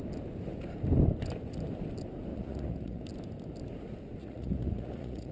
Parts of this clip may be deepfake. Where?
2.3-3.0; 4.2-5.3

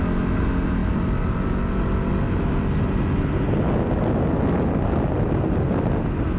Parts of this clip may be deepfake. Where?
none

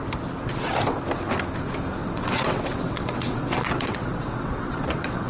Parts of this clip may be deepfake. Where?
2.0-5.3

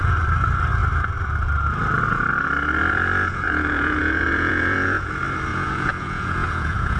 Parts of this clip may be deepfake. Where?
3.2-5.1; 5.5-7.0

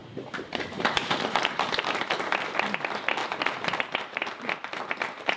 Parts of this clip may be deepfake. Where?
0.0-2.0; 3.2-4.5

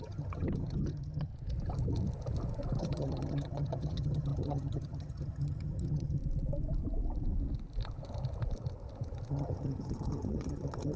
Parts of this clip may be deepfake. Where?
0.0-1.3; 2.8-6.2; 9.3-11.0

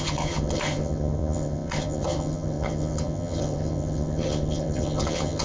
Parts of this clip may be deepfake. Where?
0.0-5.4

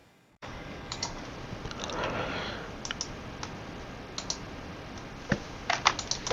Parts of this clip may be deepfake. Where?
0.0-1.2